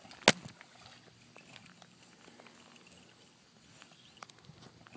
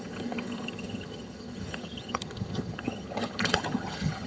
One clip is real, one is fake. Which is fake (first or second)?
second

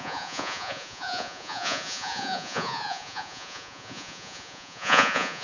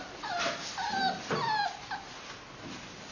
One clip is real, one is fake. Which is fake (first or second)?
first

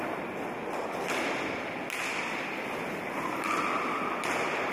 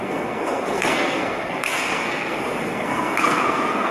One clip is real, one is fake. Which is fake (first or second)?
second